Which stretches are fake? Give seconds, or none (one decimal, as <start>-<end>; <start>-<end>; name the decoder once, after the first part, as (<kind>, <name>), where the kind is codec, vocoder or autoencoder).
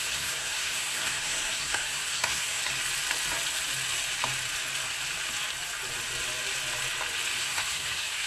0.0-2.6 (codec, SNAC); 7.4-8.3